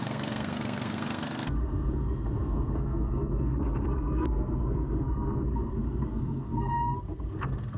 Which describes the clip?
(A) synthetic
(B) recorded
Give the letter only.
A